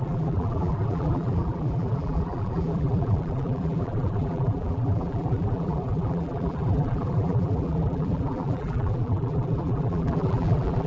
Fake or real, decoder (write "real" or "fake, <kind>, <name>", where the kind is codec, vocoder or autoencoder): fake, vocoder, BigVGAN v2